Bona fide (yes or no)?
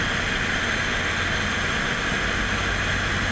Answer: yes